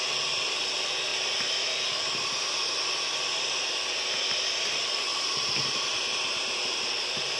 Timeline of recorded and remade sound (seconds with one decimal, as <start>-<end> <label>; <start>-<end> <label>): 0.0-5.1 recorded; 5.1-7.4 remade